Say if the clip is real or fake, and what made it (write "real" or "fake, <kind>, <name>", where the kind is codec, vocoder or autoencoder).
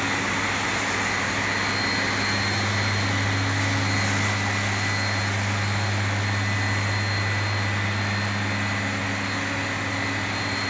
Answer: real